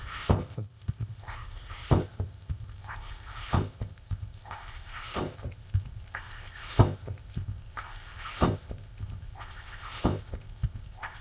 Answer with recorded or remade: remade